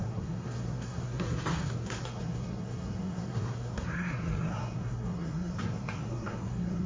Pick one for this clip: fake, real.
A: fake